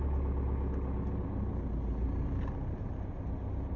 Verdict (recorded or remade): recorded